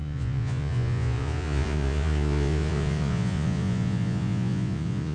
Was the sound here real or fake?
fake